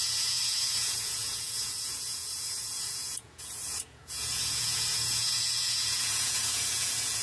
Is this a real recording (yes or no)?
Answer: no